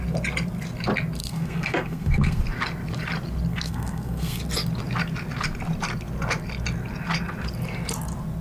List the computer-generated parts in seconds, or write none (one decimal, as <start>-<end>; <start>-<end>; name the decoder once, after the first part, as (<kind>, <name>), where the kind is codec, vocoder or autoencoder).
1.2-2.4 (codec, SNAC); 3.5-4.4